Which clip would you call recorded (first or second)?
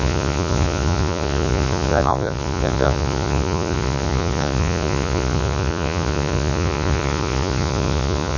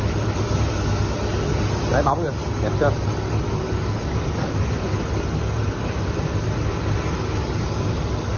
second